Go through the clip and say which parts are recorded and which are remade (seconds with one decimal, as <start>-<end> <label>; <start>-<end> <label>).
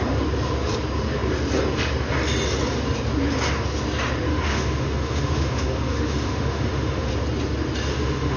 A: 0.0-4.3 recorded; 4.3-7.1 remade; 7.1-7.9 recorded; 7.9-8.4 remade